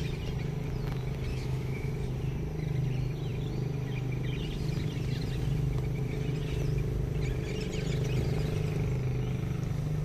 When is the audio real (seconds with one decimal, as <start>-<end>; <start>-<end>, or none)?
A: 0.0-1.3; 1.9-10.0